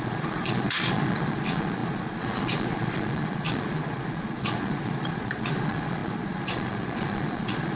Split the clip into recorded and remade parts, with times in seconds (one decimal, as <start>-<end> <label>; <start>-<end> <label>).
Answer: 0.0-7.8 remade